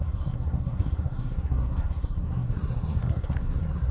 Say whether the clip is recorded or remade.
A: remade